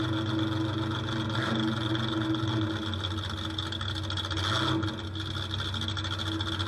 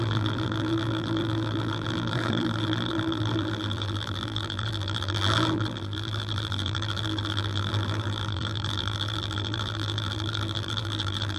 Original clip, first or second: first